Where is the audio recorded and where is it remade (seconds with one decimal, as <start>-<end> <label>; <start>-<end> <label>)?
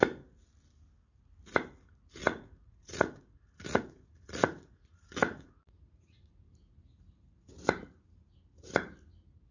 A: 0.0-2.2 recorded; 2.2-6.3 remade; 6.3-9.5 recorded